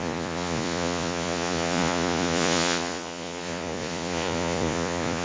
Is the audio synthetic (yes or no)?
yes